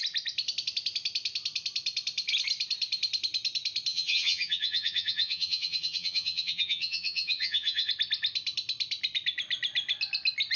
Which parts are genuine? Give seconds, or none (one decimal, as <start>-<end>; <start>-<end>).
0.0-3.9; 7.9-10.6